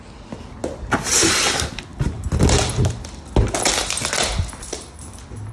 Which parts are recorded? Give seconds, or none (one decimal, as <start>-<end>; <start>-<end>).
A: 0.0-5.5